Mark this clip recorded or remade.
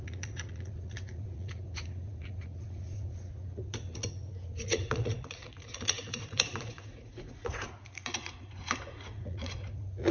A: remade